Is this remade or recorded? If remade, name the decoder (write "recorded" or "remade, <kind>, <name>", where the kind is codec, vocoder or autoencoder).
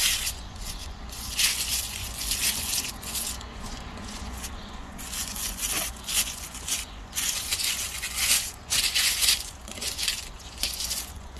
remade, vocoder, Vocos